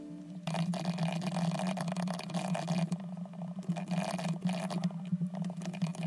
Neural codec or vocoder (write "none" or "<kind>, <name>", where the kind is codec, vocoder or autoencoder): none